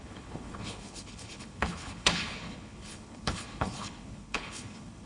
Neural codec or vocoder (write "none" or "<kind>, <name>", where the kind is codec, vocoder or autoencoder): codec, HILCodec